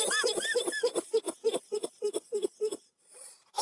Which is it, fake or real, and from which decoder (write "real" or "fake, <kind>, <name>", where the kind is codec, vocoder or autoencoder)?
real